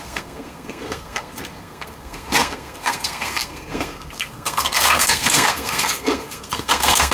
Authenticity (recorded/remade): remade